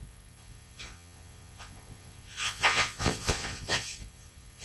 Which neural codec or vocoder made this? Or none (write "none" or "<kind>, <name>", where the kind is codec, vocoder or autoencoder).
vocoder, Vocos